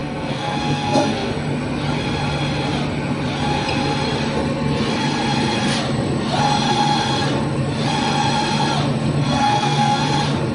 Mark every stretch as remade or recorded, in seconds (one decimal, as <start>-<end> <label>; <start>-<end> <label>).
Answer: 0.0-1.3 remade; 1.3-9.2 recorded; 9.2-10.0 remade; 10.0-10.5 recorded